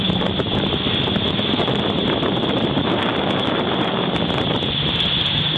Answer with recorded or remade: remade